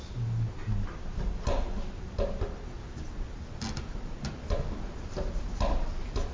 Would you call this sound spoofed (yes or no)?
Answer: no